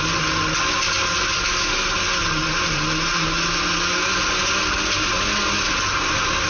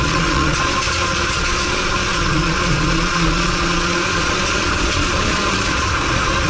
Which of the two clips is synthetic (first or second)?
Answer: second